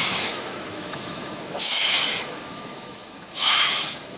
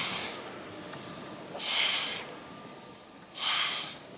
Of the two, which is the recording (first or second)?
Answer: second